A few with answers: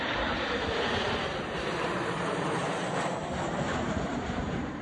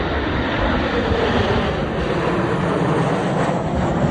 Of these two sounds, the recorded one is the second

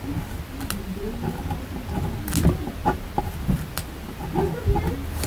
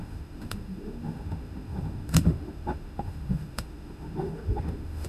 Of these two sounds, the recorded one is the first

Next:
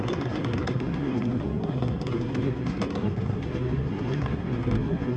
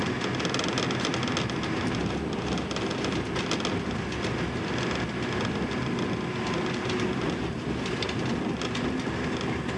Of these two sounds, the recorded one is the second